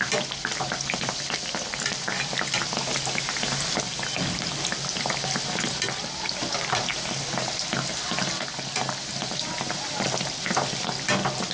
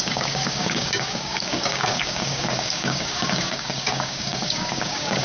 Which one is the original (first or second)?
first